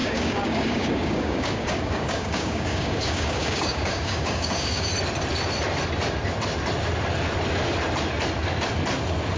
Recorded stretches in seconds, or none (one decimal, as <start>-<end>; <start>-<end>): 4.9-9.4